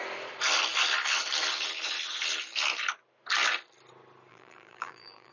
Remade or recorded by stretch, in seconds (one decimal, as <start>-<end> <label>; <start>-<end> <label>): 0.0-4.3 recorded; 4.3-5.3 remade